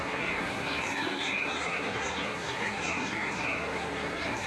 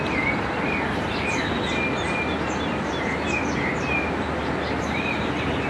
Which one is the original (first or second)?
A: second